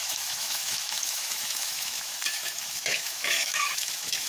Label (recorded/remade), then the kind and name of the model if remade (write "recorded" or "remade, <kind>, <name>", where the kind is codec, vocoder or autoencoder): remade, autoencoder, DAC-VAE